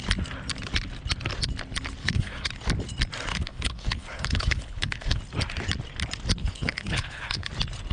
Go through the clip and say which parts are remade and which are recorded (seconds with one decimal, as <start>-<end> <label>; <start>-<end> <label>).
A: 0.0-2.0 recorded; 2.0-2.5 remade; 2.5-3.3 recorded; 3.3-5.2 remade; 5.2-6.4 recorded; 6.4-7.5 remade; 7.5-7.9 recorded